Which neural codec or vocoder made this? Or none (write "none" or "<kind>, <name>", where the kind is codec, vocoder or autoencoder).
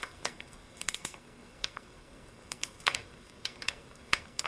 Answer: codec, SNAC